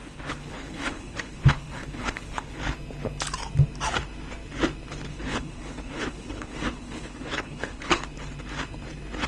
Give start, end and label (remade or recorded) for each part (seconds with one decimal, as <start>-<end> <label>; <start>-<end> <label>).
0.0-2.6 remade; 2.6-5.1 recorded; 5.1-8.0 remade; 8.0-9.3 recorded